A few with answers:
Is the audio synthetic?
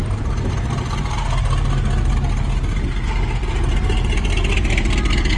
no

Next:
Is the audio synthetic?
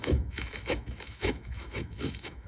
yes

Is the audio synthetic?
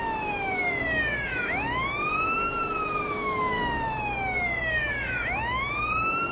yes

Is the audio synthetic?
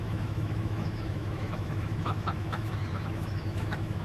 yes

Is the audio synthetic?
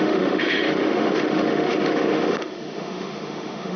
yes